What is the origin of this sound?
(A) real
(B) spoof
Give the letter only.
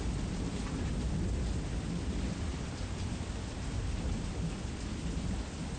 A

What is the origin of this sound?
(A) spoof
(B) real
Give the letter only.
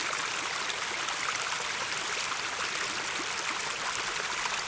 B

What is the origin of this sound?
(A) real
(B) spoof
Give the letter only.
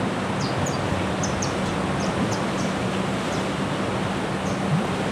A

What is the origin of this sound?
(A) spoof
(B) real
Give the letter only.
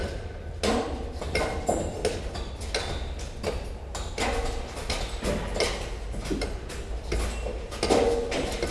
B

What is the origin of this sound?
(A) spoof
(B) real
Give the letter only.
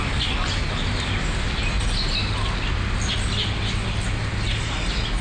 B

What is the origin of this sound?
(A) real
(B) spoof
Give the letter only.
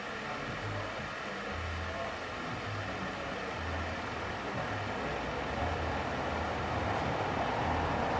A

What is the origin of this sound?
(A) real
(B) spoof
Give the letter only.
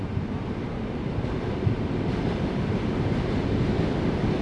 A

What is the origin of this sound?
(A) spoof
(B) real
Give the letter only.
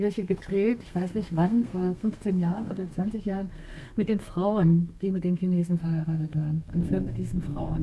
A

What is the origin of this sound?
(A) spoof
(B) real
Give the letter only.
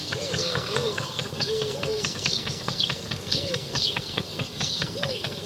A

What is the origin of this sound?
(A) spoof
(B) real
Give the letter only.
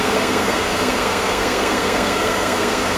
A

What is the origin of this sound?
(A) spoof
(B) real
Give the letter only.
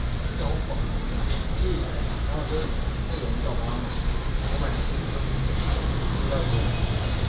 B